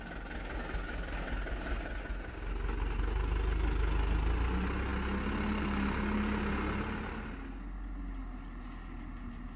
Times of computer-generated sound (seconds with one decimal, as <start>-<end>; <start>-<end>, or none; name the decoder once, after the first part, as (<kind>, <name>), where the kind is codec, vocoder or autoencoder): none